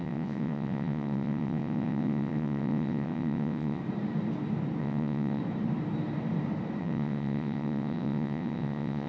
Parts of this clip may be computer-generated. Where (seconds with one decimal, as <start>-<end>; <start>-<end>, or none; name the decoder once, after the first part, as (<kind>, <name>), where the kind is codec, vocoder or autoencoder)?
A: 0.0-3.8 (vocoder, WaveNeXt); 4.8-5.4; 6.8-9.1